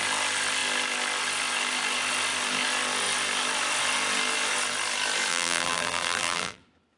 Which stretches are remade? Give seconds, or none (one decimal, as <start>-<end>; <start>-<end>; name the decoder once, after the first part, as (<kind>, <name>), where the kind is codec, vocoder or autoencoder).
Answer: 5.3-6.6 (vocoder, BigVGAN v2)